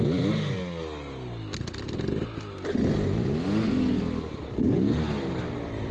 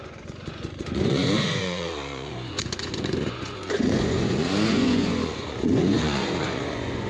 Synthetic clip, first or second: second